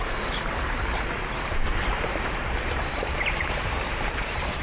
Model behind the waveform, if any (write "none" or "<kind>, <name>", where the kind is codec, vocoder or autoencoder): vocoder, BigVGAN v2